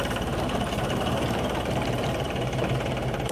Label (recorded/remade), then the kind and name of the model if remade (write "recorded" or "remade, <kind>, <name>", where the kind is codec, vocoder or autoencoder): remade, vocoder, BigVGAN v2